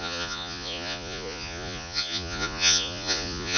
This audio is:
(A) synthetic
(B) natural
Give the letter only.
A